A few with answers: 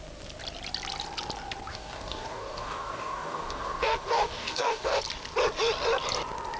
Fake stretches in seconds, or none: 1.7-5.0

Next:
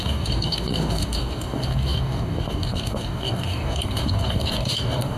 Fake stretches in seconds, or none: 0.0-5.2